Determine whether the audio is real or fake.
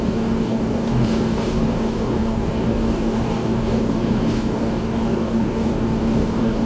fake